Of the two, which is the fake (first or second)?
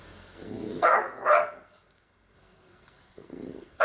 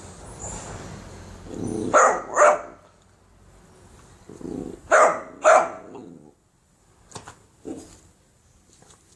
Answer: first